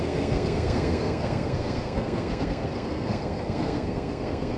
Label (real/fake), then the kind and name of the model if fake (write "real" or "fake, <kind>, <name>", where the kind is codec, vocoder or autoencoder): fake, codec, SNAC